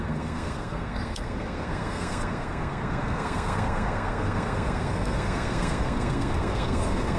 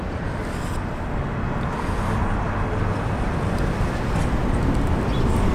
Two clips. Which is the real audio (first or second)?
second